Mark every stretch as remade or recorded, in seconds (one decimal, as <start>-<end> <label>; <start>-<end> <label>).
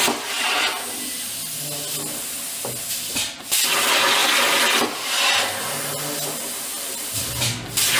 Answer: 0.0-4.2 recorded; 4.2-4.8 remade; 4.8-6.7 recorded; 6.7-7.3 remade; 7.3-8.0 recorded